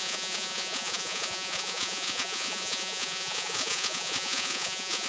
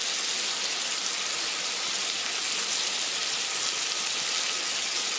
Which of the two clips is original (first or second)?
second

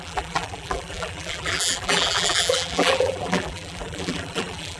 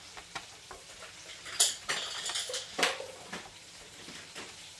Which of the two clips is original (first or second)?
second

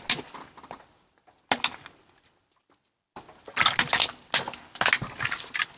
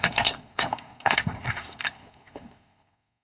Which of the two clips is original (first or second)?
first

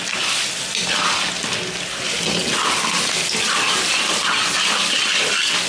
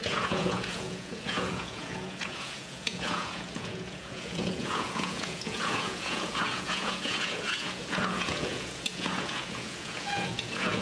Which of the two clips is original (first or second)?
first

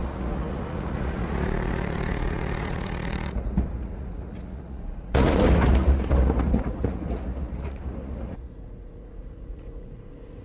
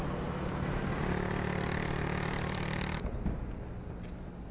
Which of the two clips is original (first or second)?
second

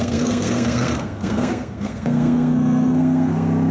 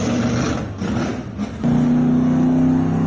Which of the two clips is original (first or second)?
second